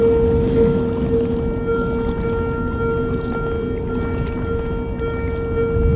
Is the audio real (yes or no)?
yes